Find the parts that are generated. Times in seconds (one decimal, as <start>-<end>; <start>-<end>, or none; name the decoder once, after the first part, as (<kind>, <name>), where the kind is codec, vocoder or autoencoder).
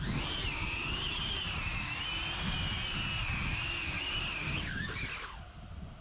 none